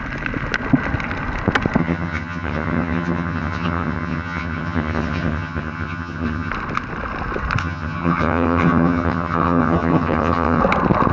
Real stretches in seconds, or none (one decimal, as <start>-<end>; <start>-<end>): 0.0-1.8; 6.5-7.6; 10.6-11.1